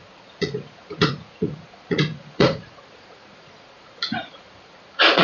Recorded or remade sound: remade